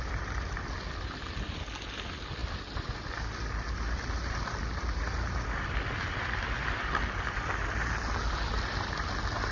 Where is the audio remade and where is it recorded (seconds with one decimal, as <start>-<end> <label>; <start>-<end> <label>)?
0.0-9.5 recorded